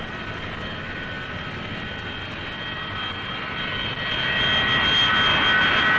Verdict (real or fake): real